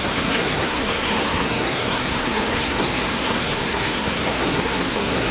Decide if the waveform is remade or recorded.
remade